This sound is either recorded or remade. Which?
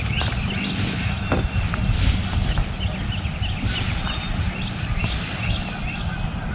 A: recorded